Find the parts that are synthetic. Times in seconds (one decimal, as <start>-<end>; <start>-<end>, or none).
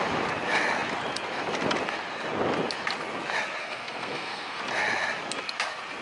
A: 3.6-4.6